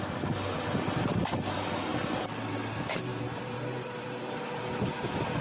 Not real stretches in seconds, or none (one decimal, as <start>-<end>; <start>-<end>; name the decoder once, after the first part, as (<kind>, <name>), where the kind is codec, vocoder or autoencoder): 1.9-2.5 (vocoder, BigVGAN v2); 3.1-4.6